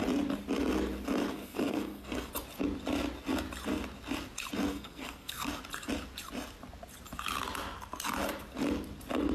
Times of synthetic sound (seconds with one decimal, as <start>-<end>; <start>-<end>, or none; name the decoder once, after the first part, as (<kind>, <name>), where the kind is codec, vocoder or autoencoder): 1.3-2.3 (codec, SNAC); 4.7-5.5

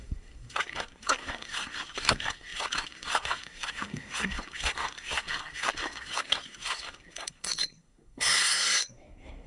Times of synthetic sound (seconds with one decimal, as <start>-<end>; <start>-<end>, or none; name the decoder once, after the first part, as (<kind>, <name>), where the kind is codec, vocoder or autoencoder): 0.0-9.5 (codec, SNAC)

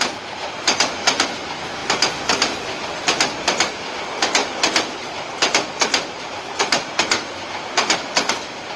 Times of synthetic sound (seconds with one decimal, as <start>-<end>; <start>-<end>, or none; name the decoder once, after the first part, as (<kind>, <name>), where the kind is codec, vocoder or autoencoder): none

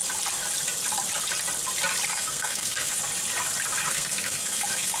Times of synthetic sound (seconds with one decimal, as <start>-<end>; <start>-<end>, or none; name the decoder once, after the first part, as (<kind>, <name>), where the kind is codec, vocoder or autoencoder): 2.1-3.0 (codec, SNAC); 3.8-5.0

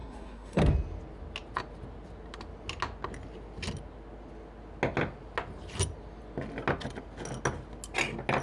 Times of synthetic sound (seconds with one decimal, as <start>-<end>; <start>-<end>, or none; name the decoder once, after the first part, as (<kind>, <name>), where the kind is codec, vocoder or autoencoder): 0.0-0.6 (codec, SNAC)

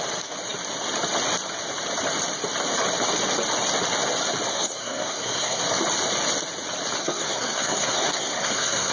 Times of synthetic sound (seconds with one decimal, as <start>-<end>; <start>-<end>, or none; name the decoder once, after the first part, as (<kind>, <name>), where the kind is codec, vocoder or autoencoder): 4.5-5.6 (codec, SNAC); 7.0-8.9